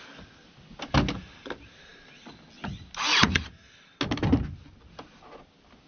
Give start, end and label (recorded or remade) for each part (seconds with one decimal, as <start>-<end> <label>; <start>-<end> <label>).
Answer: 0.0-5.9 recorded